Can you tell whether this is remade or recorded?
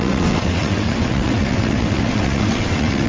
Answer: remade